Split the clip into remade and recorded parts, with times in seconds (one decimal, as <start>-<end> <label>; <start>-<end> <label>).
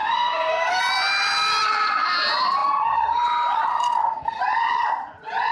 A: 0.0-0.8 remade; 0.8-3.7 recorded; 3.7-4.4 remade; 4.4-5.5 recorded